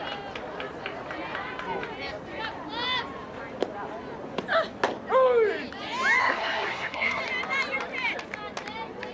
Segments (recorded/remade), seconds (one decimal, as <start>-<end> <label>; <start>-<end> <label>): 0.0-6.2 recorded; 6.2-7.2 remade; 7.2-9.1 recorded